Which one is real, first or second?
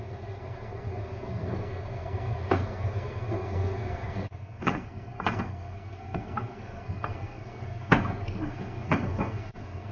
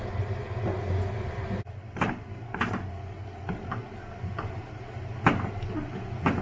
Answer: second